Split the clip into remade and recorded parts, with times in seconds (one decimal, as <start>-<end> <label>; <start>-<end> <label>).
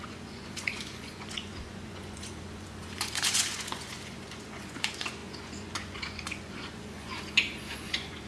0.0-8.3 remade